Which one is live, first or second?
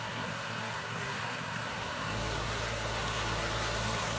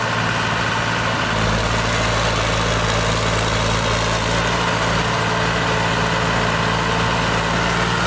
second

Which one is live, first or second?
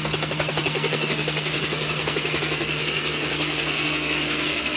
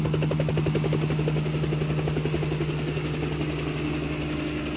second